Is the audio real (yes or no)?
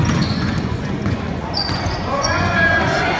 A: no